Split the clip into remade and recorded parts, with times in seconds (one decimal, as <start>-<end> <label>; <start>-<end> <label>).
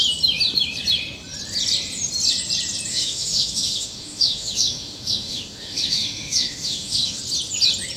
0.0-2.9 recorded; 2.9-7.2 remade; 7.2-8.0 recorded